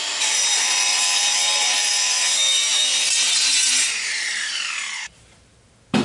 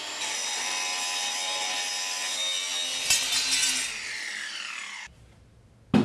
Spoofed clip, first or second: first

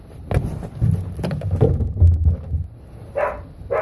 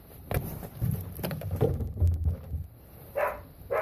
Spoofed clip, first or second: second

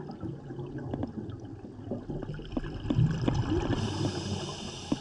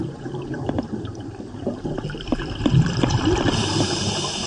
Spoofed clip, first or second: second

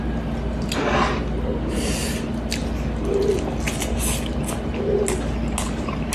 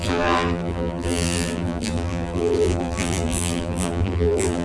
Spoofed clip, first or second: second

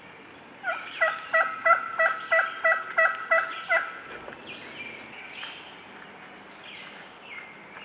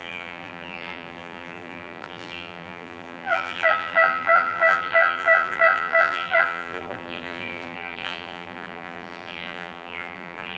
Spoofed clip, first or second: second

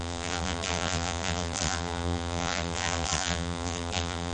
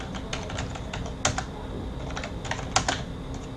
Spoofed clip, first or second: first